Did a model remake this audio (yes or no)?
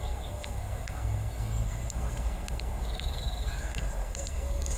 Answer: yes